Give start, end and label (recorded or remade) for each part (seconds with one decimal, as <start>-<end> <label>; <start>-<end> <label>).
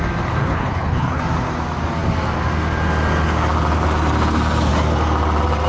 0.0-0.4 recorded; 0.4-1.2 remade; 1.2-5.7 recorded